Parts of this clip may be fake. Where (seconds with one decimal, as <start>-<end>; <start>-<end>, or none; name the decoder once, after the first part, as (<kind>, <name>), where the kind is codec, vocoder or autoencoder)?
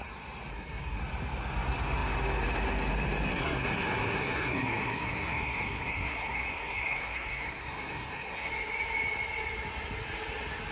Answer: 0.5-1.0 (codec, SNAC); 3.3-8.5